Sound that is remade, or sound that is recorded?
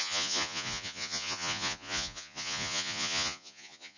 remade